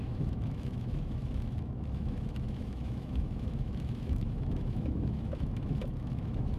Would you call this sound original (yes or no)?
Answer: no